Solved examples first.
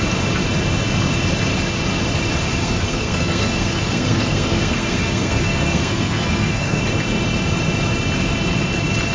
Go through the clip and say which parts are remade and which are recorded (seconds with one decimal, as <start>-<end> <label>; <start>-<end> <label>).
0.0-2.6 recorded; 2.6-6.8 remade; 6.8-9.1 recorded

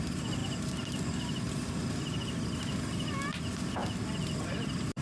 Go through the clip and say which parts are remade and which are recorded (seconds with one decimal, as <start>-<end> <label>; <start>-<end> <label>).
0.0-5.0 recorded

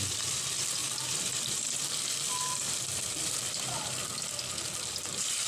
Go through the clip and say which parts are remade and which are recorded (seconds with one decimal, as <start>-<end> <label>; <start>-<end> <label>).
0.0-4.1 remade; 4.1-4.7 recorded; 4.7-5.5 remade